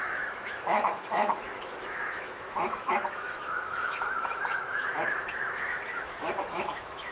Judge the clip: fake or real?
fake